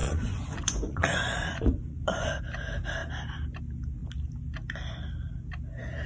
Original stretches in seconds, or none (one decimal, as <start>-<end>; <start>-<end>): 2.4-6.1